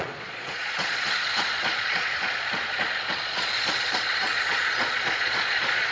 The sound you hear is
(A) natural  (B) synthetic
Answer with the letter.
B